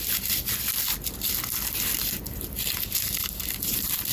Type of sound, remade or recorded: recorded